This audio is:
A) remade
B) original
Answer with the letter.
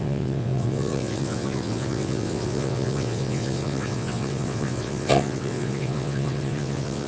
A